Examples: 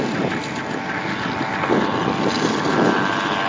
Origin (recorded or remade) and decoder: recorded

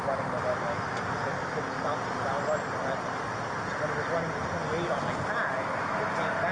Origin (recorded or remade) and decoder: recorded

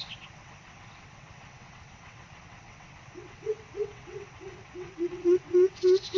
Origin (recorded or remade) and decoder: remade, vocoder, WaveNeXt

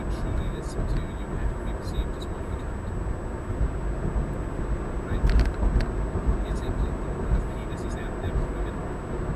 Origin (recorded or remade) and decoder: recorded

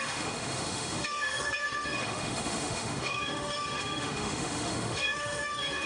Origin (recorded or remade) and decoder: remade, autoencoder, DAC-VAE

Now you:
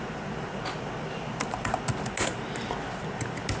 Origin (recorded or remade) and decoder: recorded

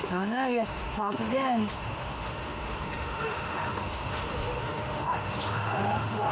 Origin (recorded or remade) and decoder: remade, autoencoder, DAC-VAE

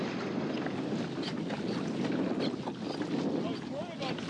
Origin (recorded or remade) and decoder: recorded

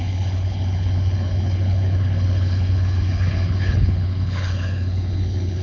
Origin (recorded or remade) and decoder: remade, codec, HILCodec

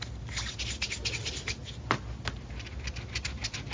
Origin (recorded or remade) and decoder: recorded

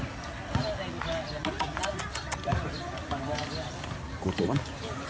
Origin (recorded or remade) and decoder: recorded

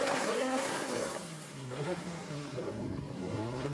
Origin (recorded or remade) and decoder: remade, codec, SNAC